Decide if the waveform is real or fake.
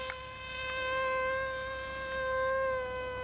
real